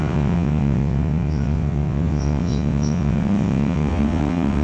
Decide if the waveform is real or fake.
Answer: fake